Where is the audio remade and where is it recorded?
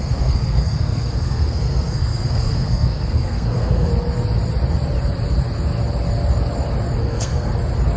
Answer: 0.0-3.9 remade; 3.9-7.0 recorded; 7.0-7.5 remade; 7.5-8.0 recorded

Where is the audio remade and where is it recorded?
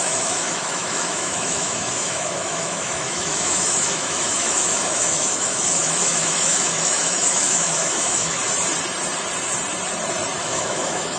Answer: 0.0-8.4 remade; 8.4-10.4 recorded; 10.4-11.2 remade